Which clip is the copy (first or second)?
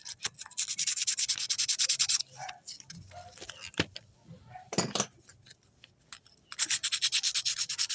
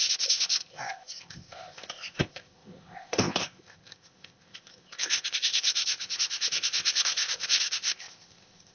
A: second